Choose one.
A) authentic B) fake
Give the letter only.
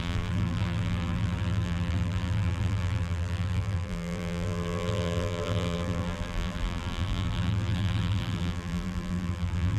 B